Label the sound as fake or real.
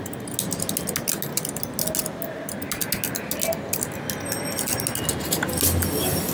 real